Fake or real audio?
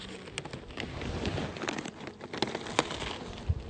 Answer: real